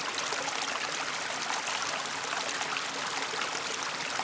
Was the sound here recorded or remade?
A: recorded